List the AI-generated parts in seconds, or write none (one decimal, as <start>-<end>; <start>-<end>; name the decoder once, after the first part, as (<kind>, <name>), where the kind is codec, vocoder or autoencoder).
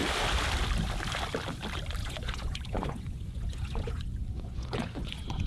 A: 2.0-5.5 (vocoder, Vocos)